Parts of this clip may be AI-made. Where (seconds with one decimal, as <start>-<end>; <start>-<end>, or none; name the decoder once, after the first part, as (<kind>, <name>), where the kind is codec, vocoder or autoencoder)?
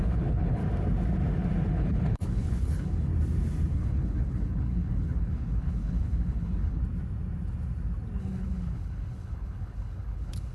0.0-0.6 (codec, HILCodec); 1.7-3.1; 3.7-6.8; 8.2-10.5